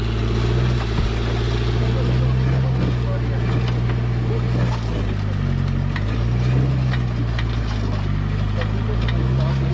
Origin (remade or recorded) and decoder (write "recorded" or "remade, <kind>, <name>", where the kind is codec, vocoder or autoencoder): recorded